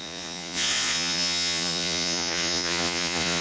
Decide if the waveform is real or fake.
fake